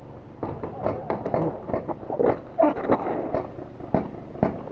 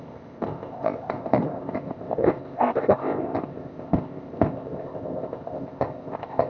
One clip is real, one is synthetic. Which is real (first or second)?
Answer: first